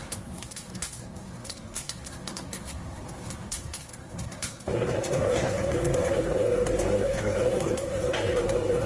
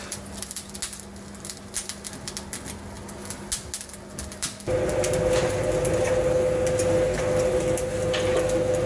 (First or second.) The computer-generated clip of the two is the first